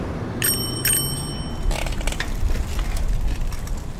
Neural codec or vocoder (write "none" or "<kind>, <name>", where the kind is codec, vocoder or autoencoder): vocoder, BigVGAN v2